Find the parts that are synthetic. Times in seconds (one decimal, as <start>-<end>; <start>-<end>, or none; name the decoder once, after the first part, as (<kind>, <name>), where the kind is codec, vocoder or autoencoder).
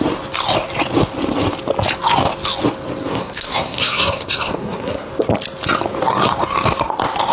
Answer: 3.1-5.1 (codec, SNAC)